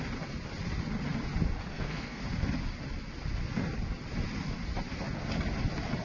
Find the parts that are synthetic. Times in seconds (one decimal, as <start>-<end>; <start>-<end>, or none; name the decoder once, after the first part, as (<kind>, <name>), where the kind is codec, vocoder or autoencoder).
1.7-2.2 (codec, SNAC)